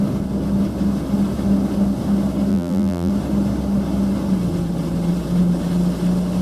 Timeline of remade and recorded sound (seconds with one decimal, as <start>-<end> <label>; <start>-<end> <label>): 0.0-2.5 recorded; 2.5-3.1 remade; 3.1-6.4 recorded